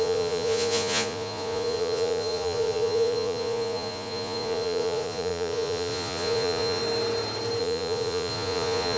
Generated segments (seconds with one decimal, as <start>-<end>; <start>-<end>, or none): 0.0-6.8; 7.6-9.0